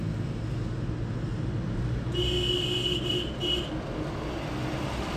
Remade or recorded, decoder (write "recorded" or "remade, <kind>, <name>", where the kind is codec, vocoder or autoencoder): recorded